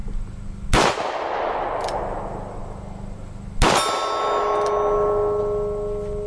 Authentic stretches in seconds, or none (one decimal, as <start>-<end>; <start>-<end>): 0.0-6.3